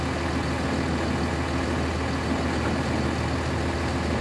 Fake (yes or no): no